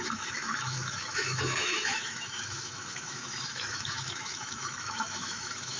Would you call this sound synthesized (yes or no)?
yes